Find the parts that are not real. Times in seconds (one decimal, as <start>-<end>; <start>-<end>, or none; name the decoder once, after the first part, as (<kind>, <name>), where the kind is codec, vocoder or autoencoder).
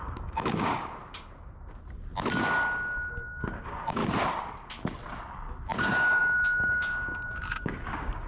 0.0-1.0 (codec, DAC); 3.1-4.0; 5.8-8.3